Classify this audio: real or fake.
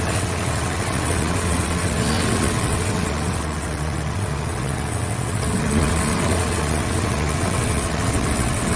fake